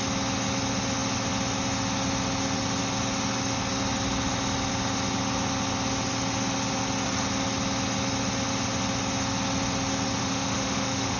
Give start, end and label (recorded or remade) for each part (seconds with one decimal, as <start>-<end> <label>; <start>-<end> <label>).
0.0-10.2 recorded; 10.2-11.2 remade